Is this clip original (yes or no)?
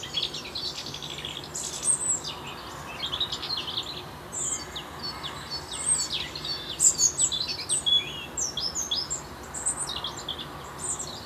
yes